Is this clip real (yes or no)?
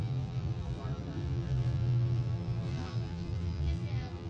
no